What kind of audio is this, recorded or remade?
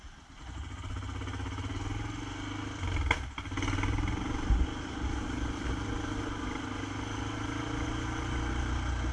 recorded